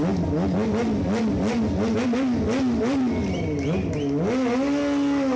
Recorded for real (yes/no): yes